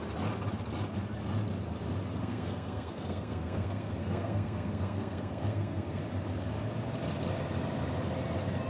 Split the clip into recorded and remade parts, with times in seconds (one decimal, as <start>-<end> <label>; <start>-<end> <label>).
0.0-2.2 recorded; 2.2-6.0 remade; 6.0-8.7 recorded